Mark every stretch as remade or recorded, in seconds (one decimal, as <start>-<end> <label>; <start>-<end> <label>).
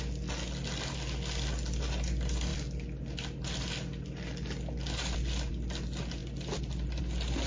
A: 0.0-7.5 recorded